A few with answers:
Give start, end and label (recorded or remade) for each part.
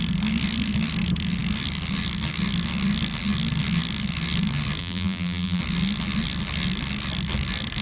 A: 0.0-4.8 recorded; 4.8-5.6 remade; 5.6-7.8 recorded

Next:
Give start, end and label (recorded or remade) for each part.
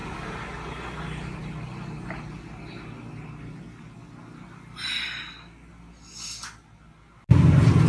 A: 0.0-7.9 recorded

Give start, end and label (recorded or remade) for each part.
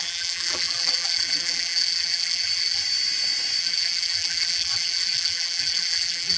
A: 0.0-2.8 remade; 2.8-3.6 recorded; 3.6-6.4 remade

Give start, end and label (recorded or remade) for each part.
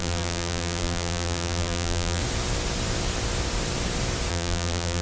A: 0.0-2.2 remade; 2.2-4.3 recorded; 4.3-5.0 remade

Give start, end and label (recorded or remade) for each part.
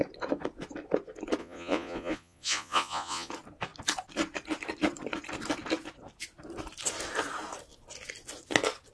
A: 0.0-1.4 recorded; 1.4-3.3 remade; 3.3-8.9 recorded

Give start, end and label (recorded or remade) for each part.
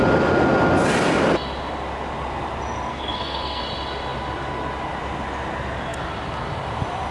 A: 0.0-2.9 recorded; 2.9-3.6 remade; 3.6-7.1 recorded